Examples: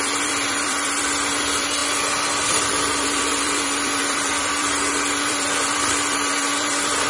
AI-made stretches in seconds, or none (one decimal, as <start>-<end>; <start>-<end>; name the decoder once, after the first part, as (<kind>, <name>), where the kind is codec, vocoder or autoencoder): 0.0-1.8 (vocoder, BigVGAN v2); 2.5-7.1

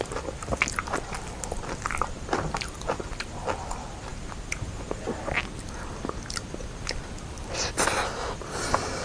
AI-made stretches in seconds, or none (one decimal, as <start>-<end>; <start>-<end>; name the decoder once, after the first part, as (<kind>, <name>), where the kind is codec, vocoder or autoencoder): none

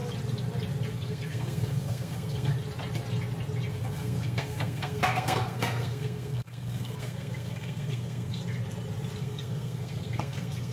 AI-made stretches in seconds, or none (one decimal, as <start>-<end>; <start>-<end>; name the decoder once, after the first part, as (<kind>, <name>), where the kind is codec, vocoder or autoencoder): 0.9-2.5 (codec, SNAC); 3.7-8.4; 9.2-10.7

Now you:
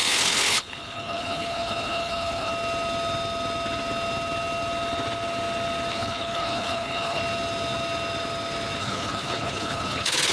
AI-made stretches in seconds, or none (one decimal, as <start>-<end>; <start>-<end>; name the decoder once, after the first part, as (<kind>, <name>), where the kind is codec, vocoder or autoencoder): 0.0-2.5 (codec, HILCodec); 5.9-7.2; 8.8-10.3

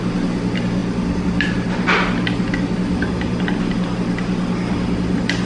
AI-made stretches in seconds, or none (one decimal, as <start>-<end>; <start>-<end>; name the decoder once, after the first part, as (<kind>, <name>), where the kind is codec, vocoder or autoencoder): none